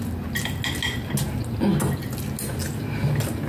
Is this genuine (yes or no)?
yes